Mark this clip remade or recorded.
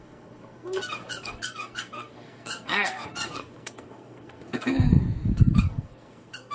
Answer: remade